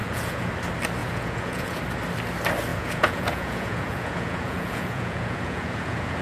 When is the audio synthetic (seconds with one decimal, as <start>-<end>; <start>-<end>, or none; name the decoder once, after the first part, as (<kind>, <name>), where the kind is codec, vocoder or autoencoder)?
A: 0.0-0.5 (vocoder, Vocos); 1.0-1.8; 2.7-6.2